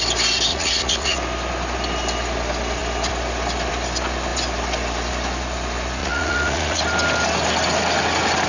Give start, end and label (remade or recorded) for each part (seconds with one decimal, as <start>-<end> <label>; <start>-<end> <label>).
0.0-0.5 recorded; 0.5-1.2 remade; 1.2-6.0 recorded; 6.0-6.8 remade; 6.8-8.5 recorded